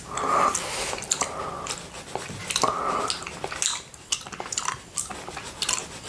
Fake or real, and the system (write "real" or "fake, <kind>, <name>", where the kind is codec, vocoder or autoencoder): real